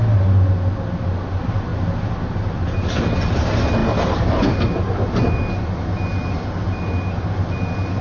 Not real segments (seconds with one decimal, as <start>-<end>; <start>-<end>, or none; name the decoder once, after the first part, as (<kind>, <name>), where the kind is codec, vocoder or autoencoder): none